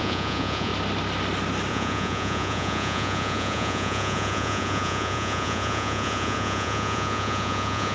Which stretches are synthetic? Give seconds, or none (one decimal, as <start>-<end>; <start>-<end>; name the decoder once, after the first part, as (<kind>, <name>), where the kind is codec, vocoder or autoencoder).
0.0-0.7 (vocoder, Vocos); 1.7-7.9